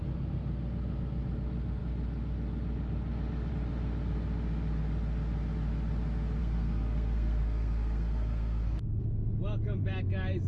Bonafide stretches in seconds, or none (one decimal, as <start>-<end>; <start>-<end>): 0.0-6.4; 9.0-10.5